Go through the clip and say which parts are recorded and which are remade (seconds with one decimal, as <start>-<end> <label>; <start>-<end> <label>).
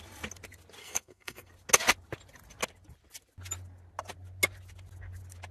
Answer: 0.0-0.8 recorded; 0.8-1.5 remade; 1.5-5.5 recorded